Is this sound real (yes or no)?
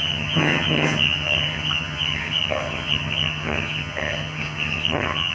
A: no